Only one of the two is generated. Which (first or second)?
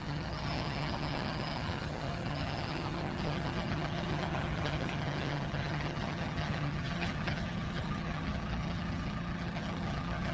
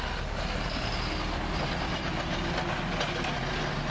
first